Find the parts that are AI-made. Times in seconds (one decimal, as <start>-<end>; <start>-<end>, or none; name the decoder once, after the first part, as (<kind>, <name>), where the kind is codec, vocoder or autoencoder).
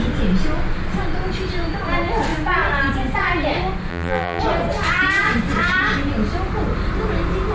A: 3.9-4.4 (vocoder, BigVGAN v2)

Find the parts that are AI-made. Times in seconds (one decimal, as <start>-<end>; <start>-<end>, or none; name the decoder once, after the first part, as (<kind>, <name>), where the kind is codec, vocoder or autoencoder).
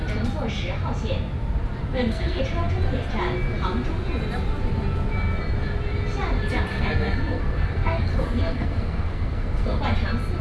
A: 1.9-2.4 (codec, SNAC); 6.7-9.8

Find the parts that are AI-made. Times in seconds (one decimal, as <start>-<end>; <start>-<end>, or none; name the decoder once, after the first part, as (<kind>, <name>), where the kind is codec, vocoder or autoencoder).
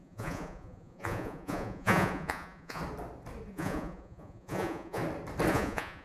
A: 0.0-2.8 (vocoder, Vocos); 3.5-5.0; 5.5-6.0